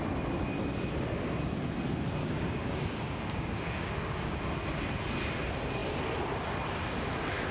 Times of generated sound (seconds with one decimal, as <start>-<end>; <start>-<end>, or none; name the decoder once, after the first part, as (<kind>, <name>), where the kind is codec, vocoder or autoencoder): 2.2-4.4 (codec, DAC)